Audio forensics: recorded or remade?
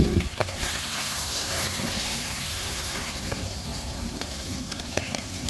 remade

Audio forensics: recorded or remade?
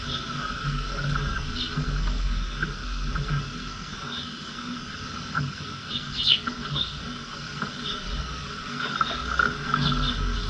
remade